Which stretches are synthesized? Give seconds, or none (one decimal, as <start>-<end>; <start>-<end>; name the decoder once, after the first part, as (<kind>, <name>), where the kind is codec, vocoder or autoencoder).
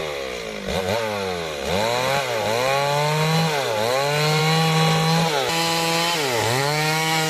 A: 6.6-7.3 (codec, DAC)